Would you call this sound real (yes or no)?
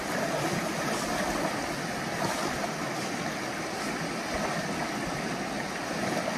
yes